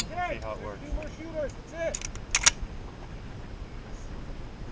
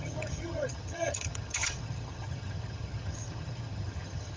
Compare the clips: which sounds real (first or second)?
first